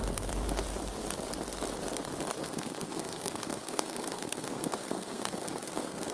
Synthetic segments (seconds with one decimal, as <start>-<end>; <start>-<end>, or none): 2.4-6.1